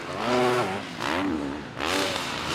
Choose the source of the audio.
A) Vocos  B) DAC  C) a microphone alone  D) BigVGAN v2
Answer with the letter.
C